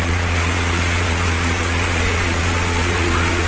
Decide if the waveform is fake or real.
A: fake